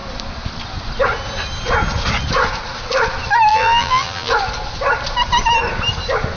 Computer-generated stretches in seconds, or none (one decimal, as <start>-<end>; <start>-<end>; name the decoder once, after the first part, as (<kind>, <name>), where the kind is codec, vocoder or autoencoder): 3.5-4.3 (vocoder, BigVGAN v2)